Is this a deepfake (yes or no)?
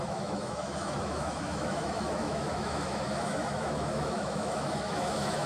yes